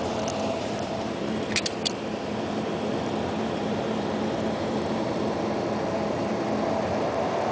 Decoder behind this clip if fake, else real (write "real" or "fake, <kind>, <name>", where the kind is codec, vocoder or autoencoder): fake, vocoder, BigVGAN v2